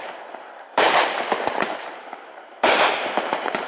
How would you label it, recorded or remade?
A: remade